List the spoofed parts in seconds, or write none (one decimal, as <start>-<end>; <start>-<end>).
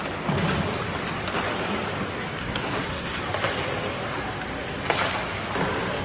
2.4-3.2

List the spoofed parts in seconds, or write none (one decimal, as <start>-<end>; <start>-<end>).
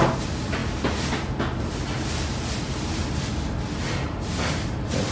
none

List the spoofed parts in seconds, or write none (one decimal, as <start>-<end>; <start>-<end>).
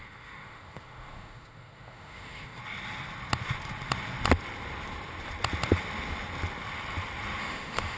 0.0-2.6; 7.4-8.0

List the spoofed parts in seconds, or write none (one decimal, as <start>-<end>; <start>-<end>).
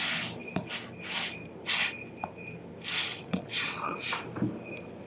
3.1-4.1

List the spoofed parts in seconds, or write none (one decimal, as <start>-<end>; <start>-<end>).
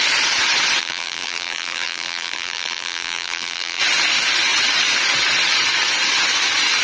0.8-3.8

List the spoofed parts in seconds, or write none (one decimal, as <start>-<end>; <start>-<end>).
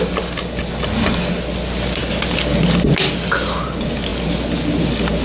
none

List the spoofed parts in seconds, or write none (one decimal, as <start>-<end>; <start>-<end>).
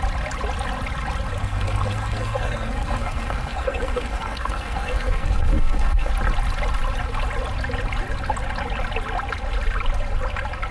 1.4-6.1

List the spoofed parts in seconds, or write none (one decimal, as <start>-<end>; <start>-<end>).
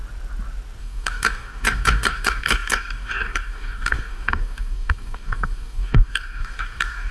0.8-7.1